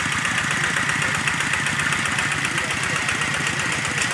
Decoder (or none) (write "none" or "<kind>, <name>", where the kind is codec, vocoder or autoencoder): none